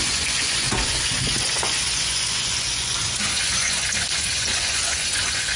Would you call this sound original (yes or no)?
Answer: no